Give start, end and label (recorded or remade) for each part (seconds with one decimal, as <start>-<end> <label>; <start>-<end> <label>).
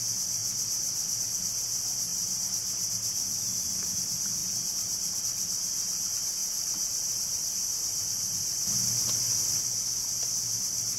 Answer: 0.0-2.1 recorded; 2.1-2.9 remade; 2.9-4.4 recorded; 4.4-5.2 remade; 5.2-6.4 recorded; 6.4-7.2 remade; 7.2-11.0 recorded